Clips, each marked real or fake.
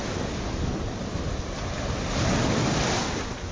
real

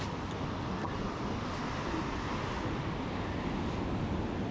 real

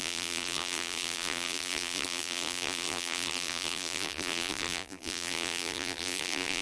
fake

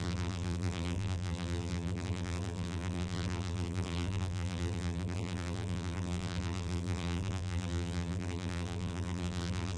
fake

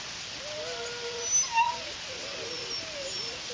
real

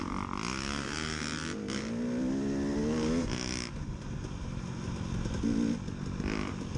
real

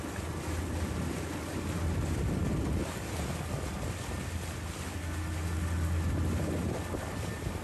real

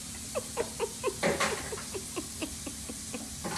fake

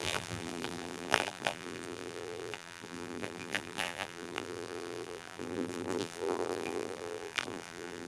fake